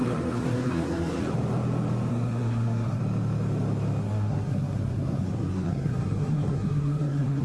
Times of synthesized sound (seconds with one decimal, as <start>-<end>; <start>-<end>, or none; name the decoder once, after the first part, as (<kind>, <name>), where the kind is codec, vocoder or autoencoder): 0.0-1.2 (codec, SNAC); 2.1-3.0; 4.0-7.4